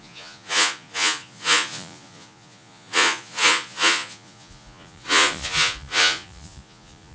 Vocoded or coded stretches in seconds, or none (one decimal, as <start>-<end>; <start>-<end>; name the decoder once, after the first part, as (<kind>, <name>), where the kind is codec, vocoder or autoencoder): 0.0-7.1 (vocoder, Vocos)